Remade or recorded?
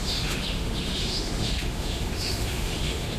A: remade